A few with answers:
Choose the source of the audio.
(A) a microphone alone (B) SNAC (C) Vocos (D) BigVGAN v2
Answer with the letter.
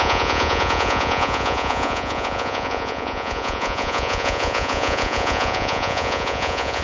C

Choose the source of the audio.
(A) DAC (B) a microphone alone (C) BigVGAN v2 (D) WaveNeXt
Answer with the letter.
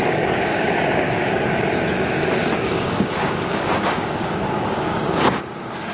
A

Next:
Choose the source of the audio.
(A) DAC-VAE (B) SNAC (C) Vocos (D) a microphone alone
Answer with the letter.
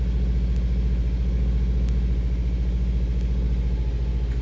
D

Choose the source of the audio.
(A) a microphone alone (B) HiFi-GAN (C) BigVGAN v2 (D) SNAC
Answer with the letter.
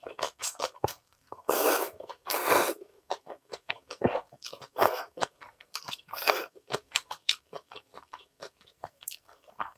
D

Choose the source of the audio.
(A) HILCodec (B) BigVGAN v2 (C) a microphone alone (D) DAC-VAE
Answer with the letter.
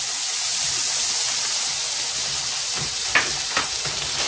C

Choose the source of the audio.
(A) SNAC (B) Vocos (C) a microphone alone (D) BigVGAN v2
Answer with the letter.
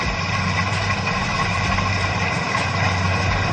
D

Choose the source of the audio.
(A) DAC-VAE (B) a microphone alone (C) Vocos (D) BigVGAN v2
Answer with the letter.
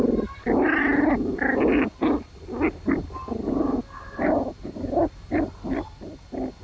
B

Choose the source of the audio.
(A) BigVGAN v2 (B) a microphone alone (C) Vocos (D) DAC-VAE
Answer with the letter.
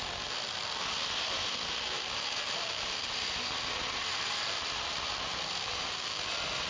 B